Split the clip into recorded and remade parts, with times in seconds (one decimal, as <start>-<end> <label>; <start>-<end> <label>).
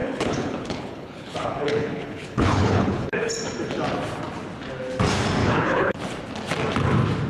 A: 0.0-3.3 remade; 3.3-5.4 recorded; 5.4-6.0 remade; 6.0-7.3 recorded